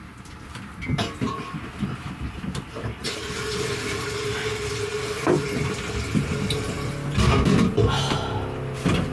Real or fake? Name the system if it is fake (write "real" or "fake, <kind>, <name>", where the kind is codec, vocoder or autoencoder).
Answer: real